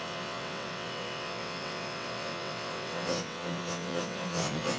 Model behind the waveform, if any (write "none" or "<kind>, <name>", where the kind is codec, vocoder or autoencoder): vocoder, WaveNeXt